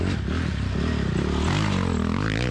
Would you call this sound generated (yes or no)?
no